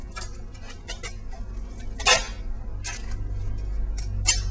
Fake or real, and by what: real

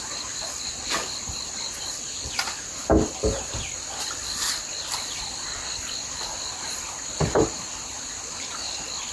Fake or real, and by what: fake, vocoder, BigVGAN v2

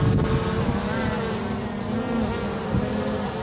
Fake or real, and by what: real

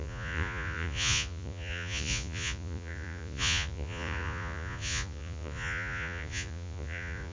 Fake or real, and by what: fake, vocoder, Vocos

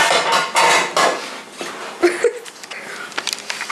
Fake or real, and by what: real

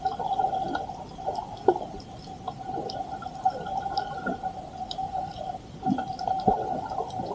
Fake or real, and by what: real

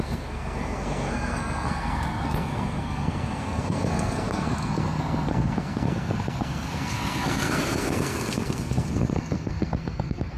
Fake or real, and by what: fake, codec, SNAC